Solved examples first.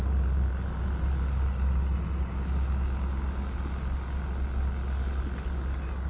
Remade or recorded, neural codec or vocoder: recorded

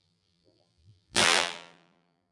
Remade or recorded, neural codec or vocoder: remade, vocoder, BigVGAN v2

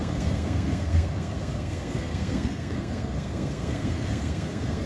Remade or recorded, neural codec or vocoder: remade, codec, SNAC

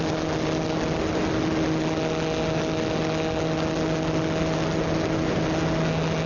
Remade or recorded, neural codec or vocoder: recorded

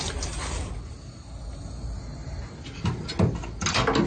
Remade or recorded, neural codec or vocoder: recorded